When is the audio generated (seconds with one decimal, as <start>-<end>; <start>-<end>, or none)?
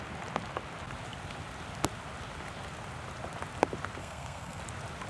4.0-4.6